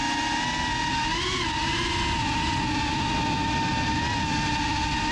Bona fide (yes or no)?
yes